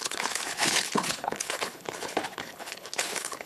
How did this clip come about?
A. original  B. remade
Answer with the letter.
B